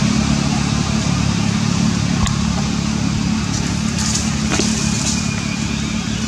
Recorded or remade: recorded